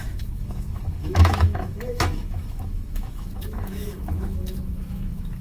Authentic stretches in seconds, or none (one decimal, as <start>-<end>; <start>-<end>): none